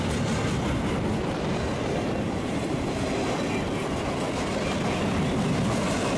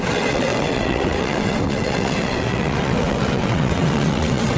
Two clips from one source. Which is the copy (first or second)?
second